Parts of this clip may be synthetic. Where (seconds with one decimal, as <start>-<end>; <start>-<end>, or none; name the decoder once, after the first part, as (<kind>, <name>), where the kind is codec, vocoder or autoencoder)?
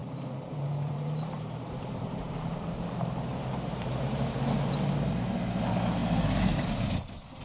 0.0-4.4 (vocoder, BigVGAN v2)